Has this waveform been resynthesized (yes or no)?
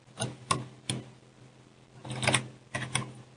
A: no